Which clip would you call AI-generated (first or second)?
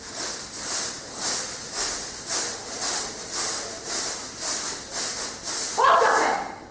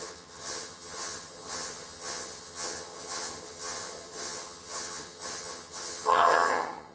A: second